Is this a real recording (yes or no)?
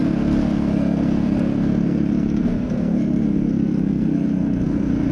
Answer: no